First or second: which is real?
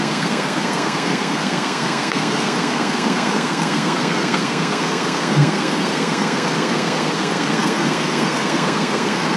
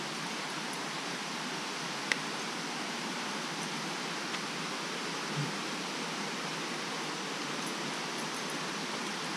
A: second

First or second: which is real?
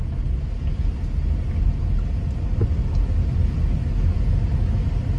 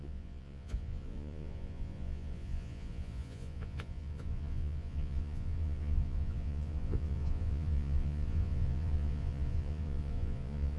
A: first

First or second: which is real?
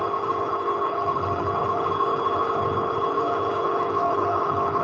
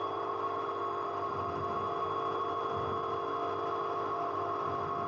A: second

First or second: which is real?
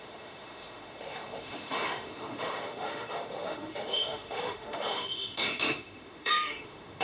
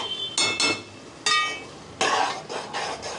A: second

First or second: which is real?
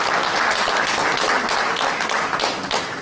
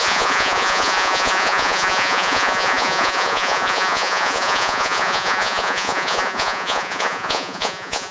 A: first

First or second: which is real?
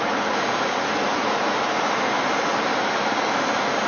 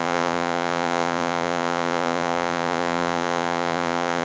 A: first